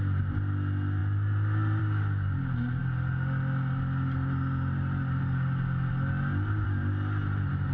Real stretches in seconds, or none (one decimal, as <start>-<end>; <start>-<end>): 0.0-7.7